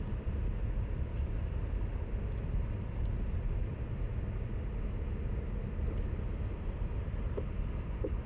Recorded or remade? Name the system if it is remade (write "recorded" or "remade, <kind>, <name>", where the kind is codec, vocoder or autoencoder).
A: recorded